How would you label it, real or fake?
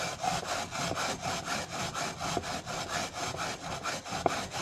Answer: real